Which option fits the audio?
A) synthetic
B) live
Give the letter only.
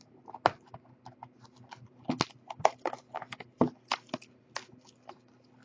B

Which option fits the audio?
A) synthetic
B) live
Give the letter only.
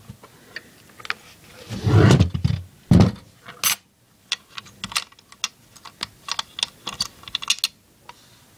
B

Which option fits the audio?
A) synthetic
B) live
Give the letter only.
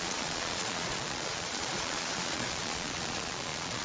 A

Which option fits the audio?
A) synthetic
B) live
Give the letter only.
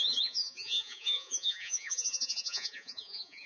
A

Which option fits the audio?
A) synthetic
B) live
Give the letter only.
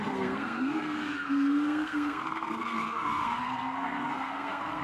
A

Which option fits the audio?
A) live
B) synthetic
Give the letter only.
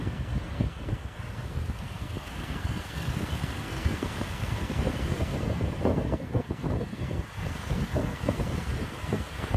B